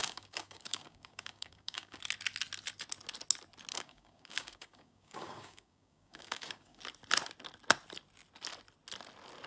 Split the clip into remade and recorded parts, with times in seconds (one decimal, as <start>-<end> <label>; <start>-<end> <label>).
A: 0.0-2.0 remade; 2.0-3.7 recorded; 3.7-6.8 remade; 6.8-9.5 recorded